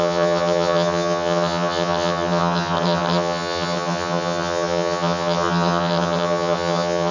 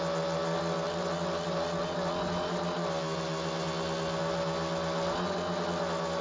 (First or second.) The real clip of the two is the second